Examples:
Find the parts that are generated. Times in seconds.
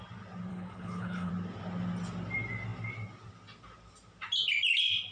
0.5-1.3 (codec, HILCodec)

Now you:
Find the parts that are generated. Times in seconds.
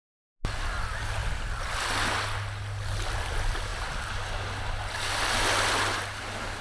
none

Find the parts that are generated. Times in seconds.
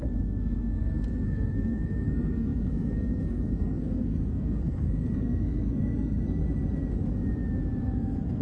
0.0-6.4 (codec, SNAC); 7.8-8.4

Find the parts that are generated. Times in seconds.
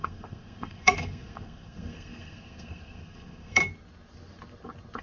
0.0-3.6 (codec, SNAC)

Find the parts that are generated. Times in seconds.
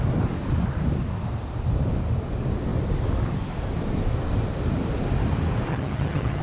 5.7-6.4 (vocoder, HiFi-GAN)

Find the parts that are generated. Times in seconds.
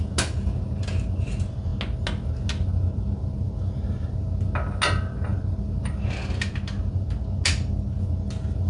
none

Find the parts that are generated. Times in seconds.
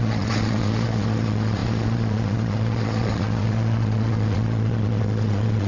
0.0-5.7 (vocoder, Vocos)